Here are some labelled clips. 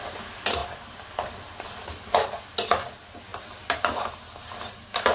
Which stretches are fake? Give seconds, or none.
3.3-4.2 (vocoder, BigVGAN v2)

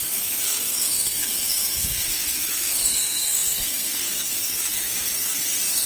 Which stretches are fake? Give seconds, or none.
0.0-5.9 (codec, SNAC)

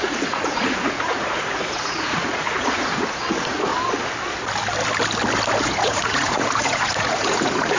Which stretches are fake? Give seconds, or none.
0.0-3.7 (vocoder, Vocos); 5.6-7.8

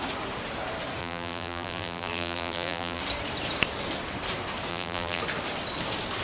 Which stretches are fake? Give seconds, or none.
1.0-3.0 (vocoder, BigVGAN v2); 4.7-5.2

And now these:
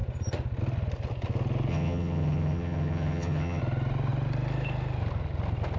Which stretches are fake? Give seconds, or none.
1.7-3.6 (vocoder, HiFi-GAN)